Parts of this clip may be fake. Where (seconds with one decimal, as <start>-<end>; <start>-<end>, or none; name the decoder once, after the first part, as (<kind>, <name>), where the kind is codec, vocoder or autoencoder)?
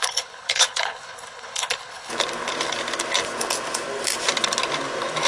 0.0-2.1 (codec, HILCodec)